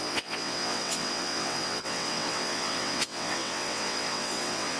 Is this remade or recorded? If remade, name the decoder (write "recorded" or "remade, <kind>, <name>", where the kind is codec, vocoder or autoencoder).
remade, vocoder, WaveNeXt